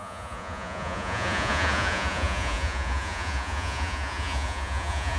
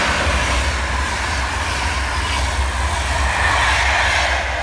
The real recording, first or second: second